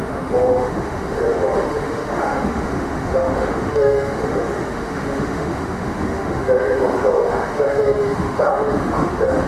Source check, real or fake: fake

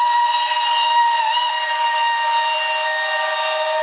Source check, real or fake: real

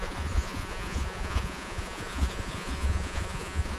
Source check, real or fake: fake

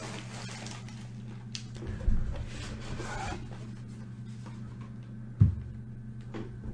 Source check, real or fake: real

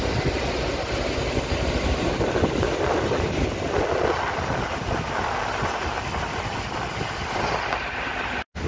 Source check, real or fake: real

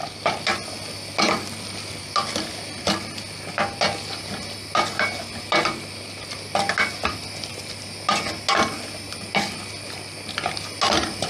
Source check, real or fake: real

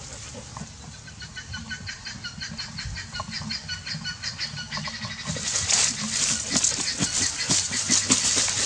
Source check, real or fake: real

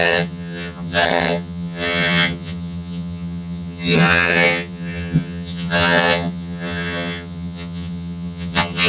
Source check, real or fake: fake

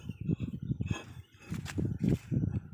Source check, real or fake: real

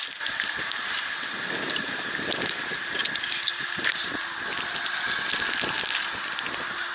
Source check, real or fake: real